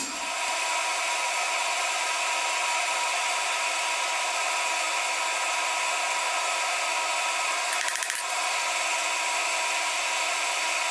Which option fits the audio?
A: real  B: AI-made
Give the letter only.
A